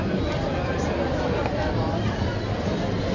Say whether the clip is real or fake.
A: real